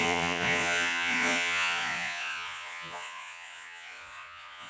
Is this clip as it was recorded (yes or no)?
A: no